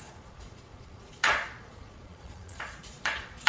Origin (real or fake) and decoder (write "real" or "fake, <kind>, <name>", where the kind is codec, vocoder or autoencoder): fake, vocoder, Vocos